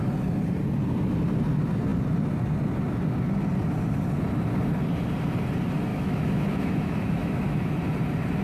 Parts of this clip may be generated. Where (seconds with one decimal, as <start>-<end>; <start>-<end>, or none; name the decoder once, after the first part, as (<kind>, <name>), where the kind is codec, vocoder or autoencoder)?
5.9-7.7 (autoencoder, DAC-VAE)